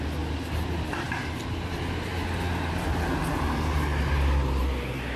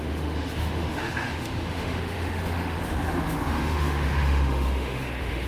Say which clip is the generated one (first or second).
second